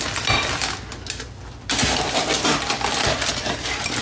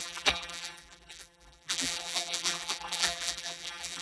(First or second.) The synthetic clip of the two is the second